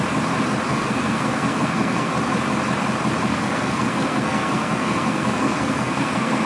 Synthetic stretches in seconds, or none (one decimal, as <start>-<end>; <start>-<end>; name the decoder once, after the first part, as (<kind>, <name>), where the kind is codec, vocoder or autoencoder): 0.7-2.2 (codec, SNAC); 3.3-6.5